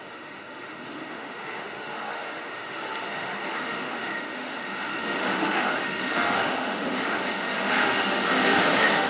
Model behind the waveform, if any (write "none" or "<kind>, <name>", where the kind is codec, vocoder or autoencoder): autoencoder, DAC-VAE